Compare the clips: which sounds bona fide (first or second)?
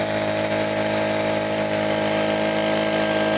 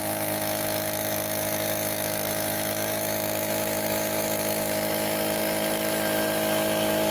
first